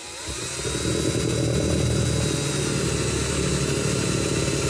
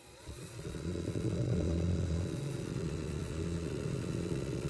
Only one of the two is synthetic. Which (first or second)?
second